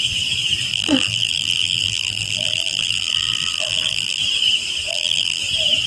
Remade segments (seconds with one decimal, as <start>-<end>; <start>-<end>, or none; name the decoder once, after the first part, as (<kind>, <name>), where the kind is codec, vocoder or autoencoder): 0.7-4.2 (vocoder, BigVGAN v2); 4.9-5.4